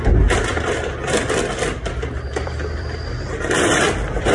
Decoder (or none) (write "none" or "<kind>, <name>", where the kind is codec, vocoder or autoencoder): vocoder, BigVGAN v2